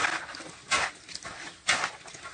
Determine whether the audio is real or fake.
real